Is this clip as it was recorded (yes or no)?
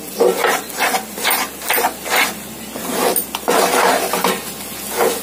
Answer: yes